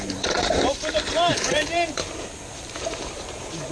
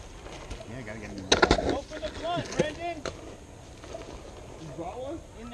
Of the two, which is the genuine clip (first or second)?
second